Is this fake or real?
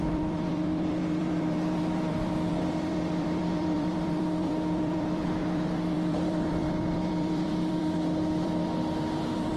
fake